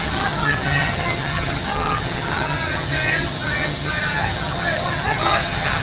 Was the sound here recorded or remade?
remade